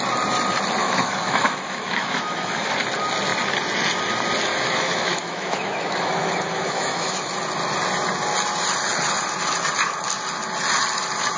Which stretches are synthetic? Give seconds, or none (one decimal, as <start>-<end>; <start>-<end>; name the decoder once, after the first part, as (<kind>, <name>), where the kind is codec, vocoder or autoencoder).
0.8-2.7 (autoencoder, DAC-VAE); 4.5-7.3